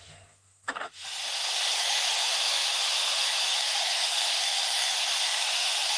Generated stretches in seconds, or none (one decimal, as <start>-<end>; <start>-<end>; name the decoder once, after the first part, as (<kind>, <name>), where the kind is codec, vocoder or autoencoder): 0.0-1.2 (autoencoder, DAC-VAE); 1.7-6.0